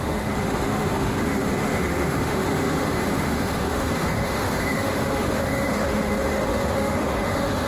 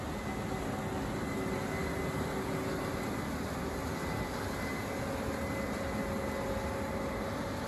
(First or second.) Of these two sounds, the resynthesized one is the first